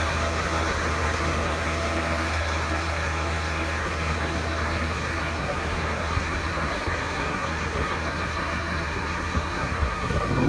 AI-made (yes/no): yes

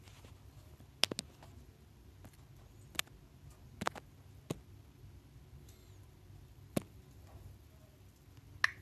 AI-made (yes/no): no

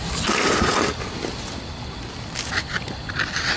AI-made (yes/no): no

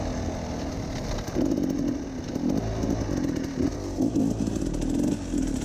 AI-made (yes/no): no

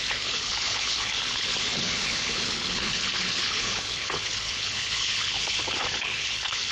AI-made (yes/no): yes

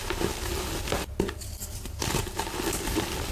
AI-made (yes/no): no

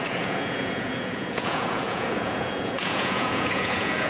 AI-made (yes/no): yes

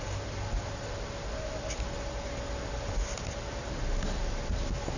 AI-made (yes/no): no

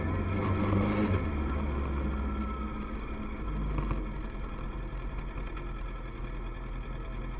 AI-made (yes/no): no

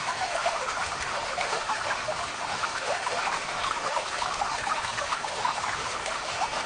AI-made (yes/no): yes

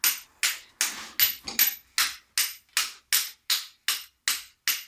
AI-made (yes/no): no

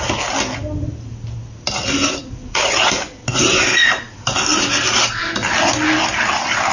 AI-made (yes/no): no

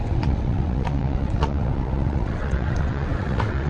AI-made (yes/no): yes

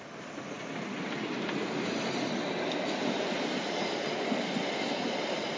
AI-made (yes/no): no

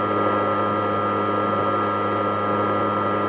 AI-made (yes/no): no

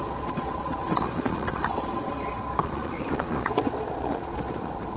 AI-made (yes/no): yes